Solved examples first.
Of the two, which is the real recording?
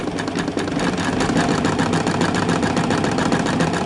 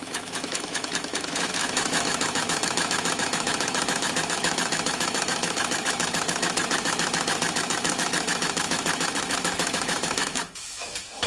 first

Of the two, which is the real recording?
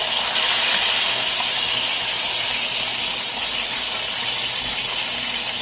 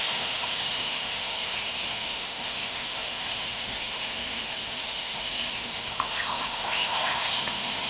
first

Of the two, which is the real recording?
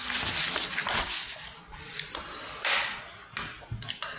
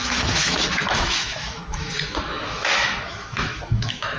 first